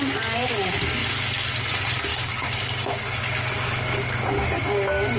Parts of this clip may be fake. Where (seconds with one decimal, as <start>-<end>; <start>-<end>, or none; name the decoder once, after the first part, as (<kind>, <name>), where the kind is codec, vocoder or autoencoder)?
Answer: 2.1-5.2 (codec, DAC)